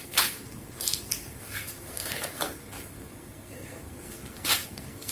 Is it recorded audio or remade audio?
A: remade